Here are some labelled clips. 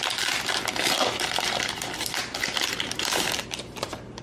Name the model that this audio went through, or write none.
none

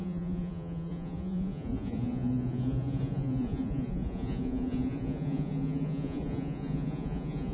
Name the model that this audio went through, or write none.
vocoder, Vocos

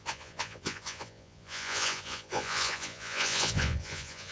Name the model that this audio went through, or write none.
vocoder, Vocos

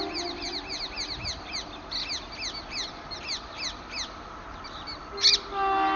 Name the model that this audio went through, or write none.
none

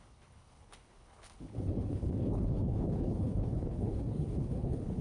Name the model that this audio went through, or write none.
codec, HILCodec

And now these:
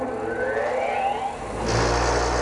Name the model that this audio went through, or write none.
none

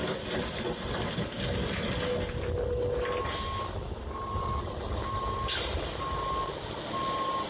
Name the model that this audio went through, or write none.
none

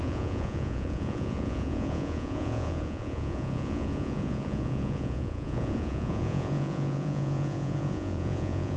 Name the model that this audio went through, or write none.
vocoder, Vocos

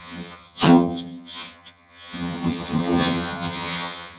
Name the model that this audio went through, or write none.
vocoder, HiFi-GAN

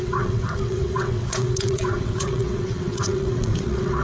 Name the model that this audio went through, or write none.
vocoder, WaveNeXt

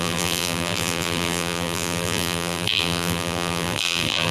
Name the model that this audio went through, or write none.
vocoder, BigVGAN v2